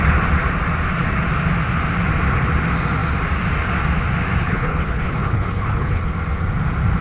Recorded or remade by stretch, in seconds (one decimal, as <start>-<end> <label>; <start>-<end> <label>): 0.0-4.4 recorded; 4.4-6.0 remade; 6.0-7.0 recorded